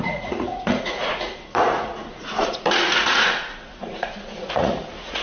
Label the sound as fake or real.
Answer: fake